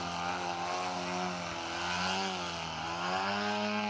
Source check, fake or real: real